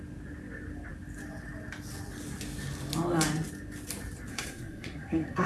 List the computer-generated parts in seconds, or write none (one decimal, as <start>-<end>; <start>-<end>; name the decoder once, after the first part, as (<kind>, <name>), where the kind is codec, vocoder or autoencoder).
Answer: 4.3-5.5 (codec, SNAC)